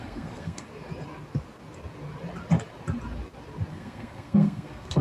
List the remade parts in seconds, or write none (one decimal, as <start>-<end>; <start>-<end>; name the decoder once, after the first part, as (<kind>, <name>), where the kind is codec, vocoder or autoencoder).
0.0-0.7 (codec, SNAC); 3.7-5.0